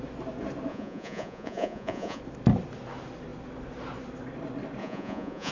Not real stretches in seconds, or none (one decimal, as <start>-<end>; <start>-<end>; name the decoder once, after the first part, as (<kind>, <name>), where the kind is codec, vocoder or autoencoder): 0.7-2.2 (vocoder, Vocos); 4.8-5.5